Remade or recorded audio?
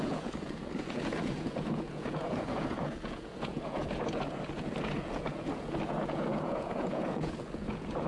remade